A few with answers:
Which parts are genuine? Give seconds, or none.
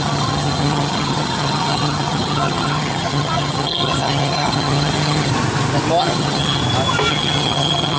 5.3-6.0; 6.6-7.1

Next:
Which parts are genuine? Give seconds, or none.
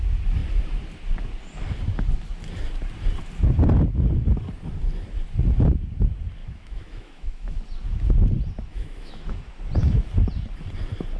0.0-6.4; 7.6-8.7; 9.5-11.2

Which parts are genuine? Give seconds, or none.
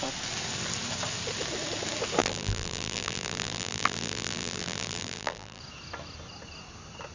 0.0-2.2; 5.6-7.1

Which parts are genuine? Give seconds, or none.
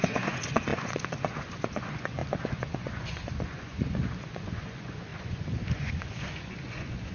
none